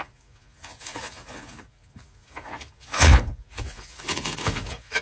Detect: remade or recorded remade